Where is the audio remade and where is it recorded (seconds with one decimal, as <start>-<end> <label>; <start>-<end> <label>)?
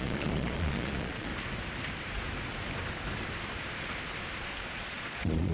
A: 0.0-1.3 remade; 1.3-4.6 recorded; 4.6-5.5 remade